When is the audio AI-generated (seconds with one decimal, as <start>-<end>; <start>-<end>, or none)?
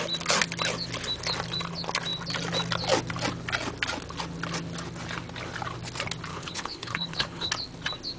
6.3-7.5